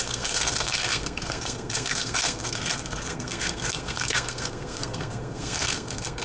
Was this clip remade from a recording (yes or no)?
yes